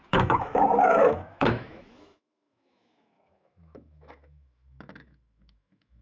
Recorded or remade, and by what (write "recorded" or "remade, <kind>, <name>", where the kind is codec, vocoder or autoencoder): remade, autoencoder, DAC-VAE